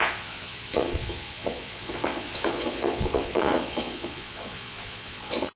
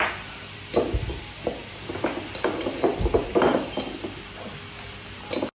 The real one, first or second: second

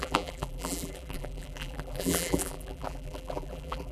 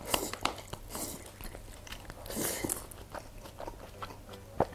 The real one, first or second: second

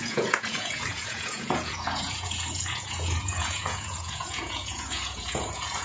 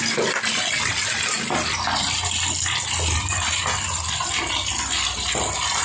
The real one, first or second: second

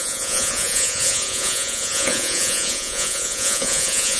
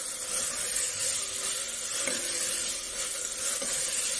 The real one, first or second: second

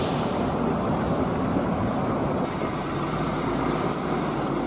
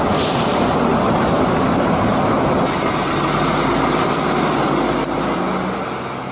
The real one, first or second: second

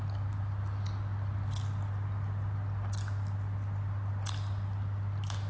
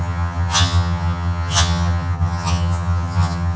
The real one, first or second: first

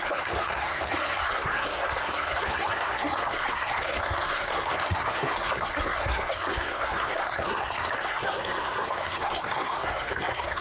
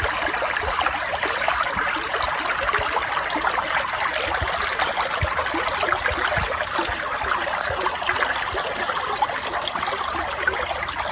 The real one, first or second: second